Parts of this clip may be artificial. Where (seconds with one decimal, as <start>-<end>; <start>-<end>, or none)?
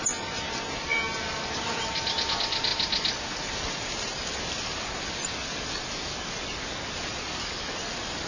none